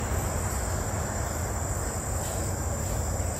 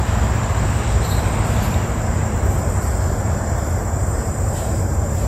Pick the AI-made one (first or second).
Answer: second